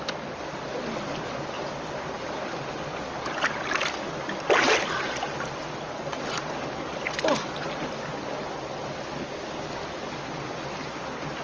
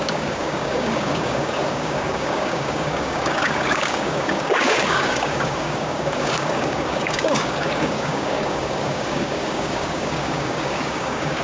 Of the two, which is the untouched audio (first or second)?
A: first